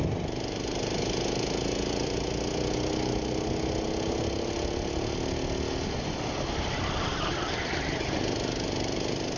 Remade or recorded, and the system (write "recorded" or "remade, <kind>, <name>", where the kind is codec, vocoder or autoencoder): recorded